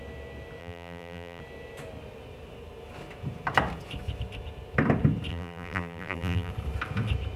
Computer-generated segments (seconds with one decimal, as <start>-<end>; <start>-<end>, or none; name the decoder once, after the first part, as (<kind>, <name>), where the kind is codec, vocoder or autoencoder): 0.6-1.4 (vocoder, BigVGAN v2); 5.3-6.5